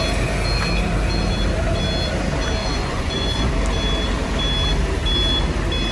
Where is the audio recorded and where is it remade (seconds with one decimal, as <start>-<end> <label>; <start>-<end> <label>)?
0.0-2.6 recorded; 2.6-3.5 remade; 3.5-5.9 recorded